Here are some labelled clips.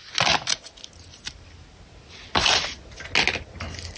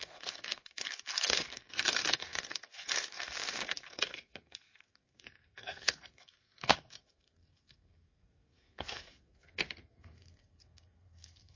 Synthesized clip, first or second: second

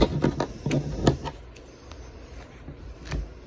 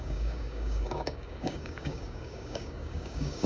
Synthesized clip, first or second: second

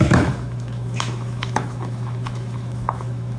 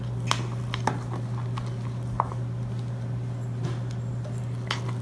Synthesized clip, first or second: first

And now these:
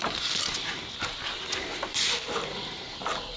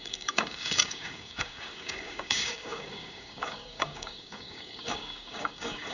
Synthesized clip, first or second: second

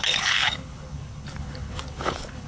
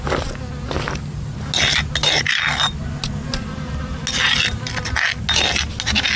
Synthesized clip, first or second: first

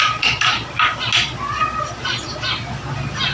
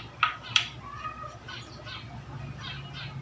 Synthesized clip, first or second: second